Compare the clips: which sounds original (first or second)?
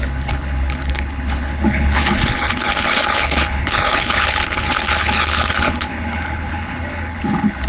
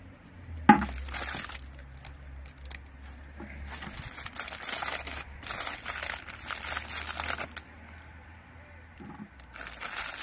second